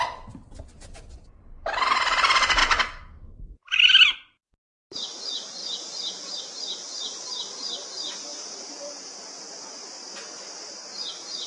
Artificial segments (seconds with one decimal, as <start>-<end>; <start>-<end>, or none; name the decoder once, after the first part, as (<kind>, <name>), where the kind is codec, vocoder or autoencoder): 5.6-6.4 (vocoder, BigVGAN v2); 8.3-9.3